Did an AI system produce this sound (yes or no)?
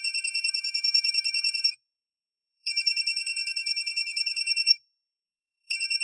yes